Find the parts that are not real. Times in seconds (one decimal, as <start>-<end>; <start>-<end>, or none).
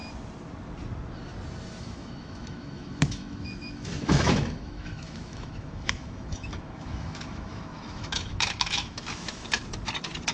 1.8-9.6